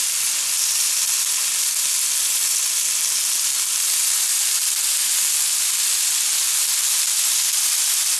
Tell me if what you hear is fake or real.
real